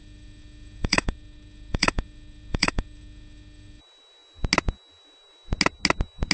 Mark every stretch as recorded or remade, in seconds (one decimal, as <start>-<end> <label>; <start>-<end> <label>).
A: 0.0-3.8 remade; 3.8-6.3 recorded